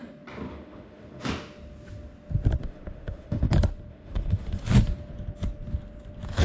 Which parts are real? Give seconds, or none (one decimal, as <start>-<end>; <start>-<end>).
0.0-0.5; 1.3-2.6; 3.5-3.9; 4.7-6.4